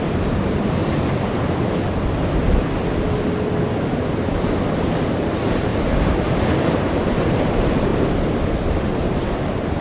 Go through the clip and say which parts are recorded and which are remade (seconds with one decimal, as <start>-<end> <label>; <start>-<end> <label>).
0.0-0.8 remade; 0.8-5.2 recorded; 5.2-7.9 remade; 7.9-8.7 recorded; 8.7-9.8 remade